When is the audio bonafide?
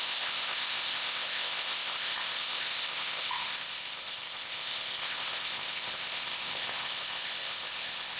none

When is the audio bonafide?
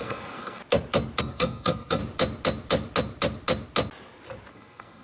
0.6-1.2; 2.0-4.5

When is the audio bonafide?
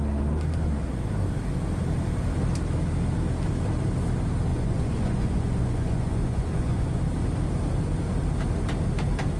0.0-4.5; 7.0-9.4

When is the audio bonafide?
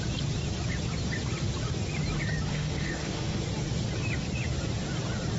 0.0-2.5; 3.4-5.4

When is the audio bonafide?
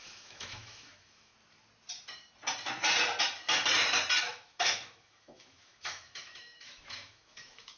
1.3-4.2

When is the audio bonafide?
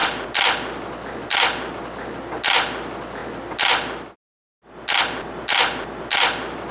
0.0-6.7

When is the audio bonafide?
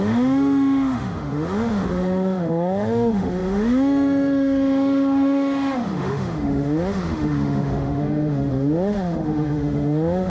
none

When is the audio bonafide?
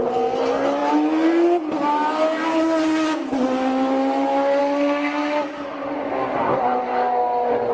0.0-7.7